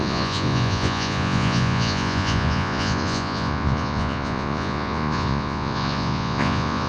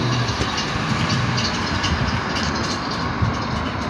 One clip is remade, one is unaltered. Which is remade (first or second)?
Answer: first